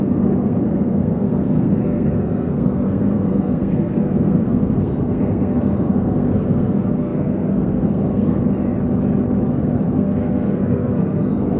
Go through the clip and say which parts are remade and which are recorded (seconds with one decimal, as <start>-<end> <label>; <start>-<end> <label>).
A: 0.0-8.4 remade; 8.4-9.5 recorded; 9.5-11.6 remade